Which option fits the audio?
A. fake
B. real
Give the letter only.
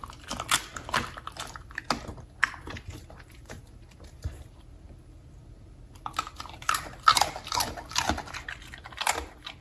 B